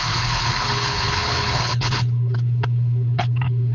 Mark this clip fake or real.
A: fake